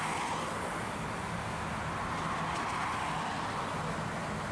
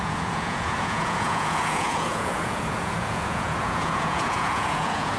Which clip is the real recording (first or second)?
first